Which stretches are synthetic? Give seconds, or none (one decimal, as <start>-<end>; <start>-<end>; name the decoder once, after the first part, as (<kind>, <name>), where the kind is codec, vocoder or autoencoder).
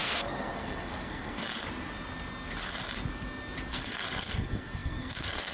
0.0-1.5 (codec, SNAC); 3.7-5.5